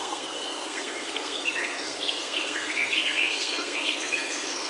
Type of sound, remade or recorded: remade